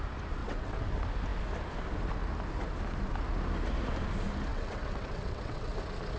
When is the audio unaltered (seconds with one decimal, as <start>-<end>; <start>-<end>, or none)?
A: 0.0-0.4; 0.9-4.5; 5.8-6.2